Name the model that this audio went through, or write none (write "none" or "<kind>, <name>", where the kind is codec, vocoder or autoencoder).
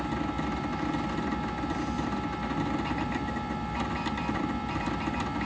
none